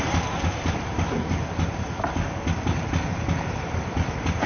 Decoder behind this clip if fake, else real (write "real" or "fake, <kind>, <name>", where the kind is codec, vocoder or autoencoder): real